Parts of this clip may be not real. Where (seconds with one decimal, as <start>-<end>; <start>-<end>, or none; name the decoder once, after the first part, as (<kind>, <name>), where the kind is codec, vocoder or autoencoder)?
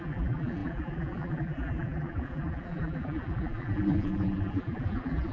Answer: 0.0-5.3 (vocoder, BigVGAN v2)